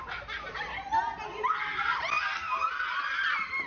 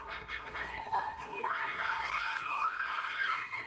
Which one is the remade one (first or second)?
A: second